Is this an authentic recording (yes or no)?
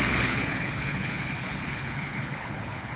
no